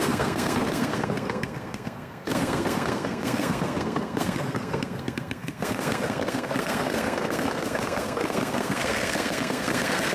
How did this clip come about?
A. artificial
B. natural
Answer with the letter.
A